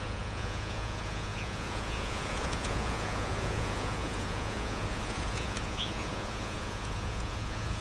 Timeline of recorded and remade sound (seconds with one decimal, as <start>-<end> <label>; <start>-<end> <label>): 0.0-7.8 remade